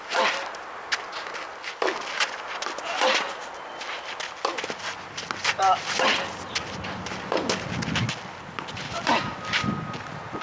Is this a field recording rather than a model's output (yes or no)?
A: yes